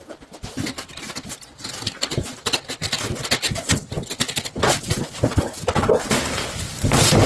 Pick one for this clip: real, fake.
fake